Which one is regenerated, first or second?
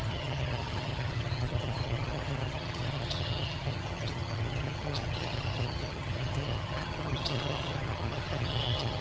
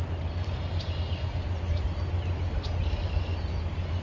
first